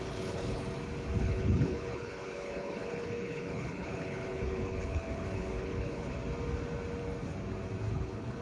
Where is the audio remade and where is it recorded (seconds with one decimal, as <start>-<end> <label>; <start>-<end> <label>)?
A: 0.0-0.6 remade; 0.6-1.2 recorded; 1.2-6.2 remade; 6.2-7.9 recorded; 7.9-8.4 remade